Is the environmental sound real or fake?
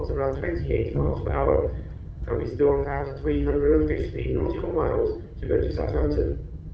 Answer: fake